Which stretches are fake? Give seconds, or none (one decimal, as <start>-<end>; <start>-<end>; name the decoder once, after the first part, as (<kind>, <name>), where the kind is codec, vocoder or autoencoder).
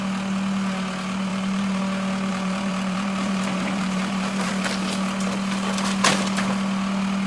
1.3-1.8 (vocoder, BigVGAN v2); 2.3-4.5